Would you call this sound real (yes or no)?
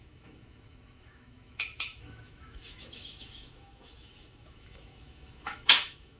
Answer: no